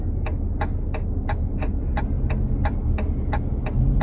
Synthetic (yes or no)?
no